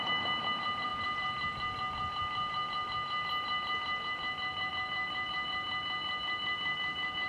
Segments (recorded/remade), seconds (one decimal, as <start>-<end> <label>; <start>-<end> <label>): 0.0-7.3 recorded